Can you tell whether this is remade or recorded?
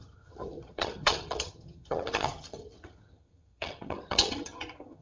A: remade